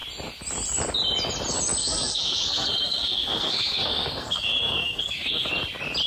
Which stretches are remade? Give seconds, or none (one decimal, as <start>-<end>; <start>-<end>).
1.8-5.5